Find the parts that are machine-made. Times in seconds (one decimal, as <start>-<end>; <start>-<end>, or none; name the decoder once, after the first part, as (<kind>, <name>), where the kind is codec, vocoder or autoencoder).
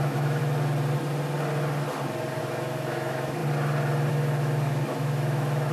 0.0-0.4 (autoencoder, DAC-VAE); 2.4-3.4; 4.1-5.7